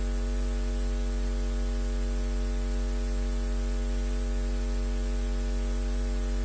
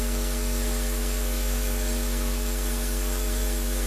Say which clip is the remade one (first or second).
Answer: second